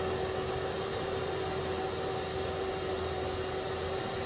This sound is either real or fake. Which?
real